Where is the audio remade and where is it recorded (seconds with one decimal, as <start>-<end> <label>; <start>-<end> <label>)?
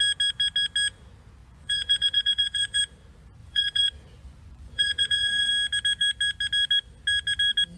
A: 0.0-1.4 recorded; 1.4-2.8 remade; 2.8-3.4 recorded; 3.4-5.5 remade; 5.5-7.8 recorded